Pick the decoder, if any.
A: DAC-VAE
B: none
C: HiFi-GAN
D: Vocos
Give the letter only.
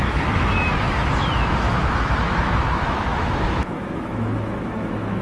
A